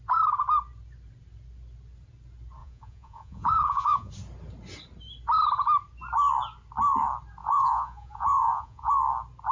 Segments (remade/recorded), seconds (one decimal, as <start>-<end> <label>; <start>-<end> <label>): 0.0-2.6 recorded; 2.6-4.1 remade; 4.1-7.4 recorded; 7.4-8.9 remade; 8.9-9.5 recorded